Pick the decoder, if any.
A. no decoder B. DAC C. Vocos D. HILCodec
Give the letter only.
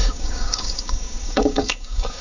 B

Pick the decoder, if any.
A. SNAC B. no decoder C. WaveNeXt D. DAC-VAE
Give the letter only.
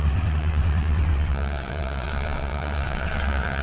C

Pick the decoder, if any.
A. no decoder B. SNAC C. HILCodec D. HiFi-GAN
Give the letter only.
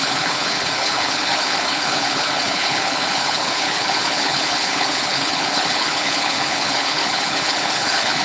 C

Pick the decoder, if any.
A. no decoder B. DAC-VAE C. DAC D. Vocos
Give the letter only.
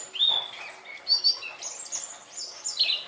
A